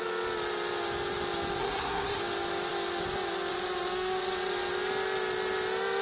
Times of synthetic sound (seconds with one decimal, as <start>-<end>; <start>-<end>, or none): 1.6-2.2